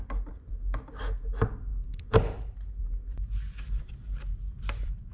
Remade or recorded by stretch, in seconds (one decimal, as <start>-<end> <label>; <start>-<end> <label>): 0.0-1.7 recorded; 1.7-5.1 remade